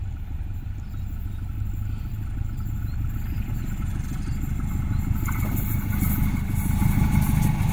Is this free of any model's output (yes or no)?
yes